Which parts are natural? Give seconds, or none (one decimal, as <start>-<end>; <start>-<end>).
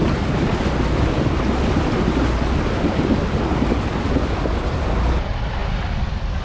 0.0-6.4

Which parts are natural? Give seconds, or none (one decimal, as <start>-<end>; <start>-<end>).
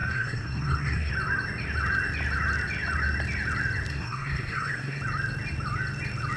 1.1-3.9; 5.0-6.4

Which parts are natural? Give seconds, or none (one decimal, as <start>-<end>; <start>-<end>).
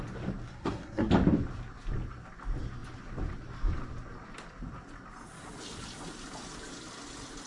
0.0-0.5; 1.1-7.5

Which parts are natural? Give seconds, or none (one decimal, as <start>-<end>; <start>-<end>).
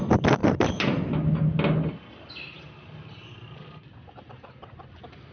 0.0-5.3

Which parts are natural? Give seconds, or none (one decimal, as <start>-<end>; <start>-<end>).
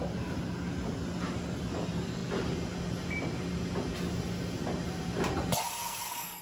0.0-5.8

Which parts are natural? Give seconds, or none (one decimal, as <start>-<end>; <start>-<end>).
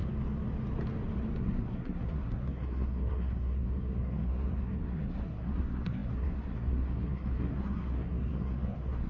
0.0-1.4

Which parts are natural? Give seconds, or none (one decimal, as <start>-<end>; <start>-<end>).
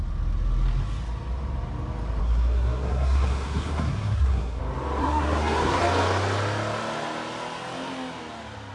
0.0-2.2; 4.6-5.0; 5.8-8.7